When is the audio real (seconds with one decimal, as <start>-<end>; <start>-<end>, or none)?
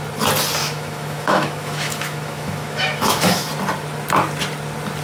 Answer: 0.0-0.6; 3.5-5.0